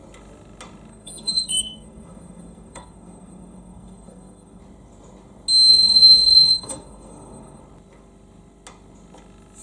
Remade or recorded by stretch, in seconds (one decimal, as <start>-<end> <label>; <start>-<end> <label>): 0.0-0.9 recorded; 0.9-4.6 remade; 4.6-5.7 recorded; 5.7-7.6 remade; 7.6-9.6 recorded